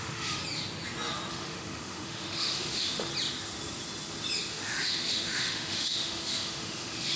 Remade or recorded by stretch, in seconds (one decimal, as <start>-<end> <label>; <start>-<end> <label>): 0.0-0.4 remade; 0.4-1.3 recorded; 1.3-3.1 remade; 3.1-4.5 recorded; 4.5-7.2 remade